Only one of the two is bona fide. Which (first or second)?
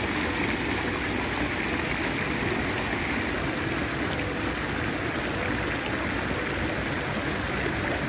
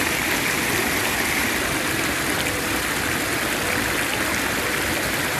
first